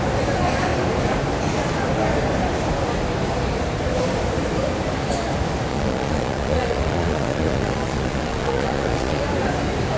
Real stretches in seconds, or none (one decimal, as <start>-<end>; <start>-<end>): 0.0-5.7; 9.2-10.0